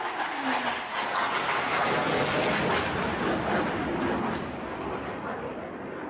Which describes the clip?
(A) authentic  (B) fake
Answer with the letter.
A